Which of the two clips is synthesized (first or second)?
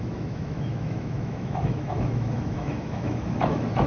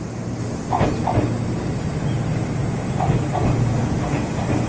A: first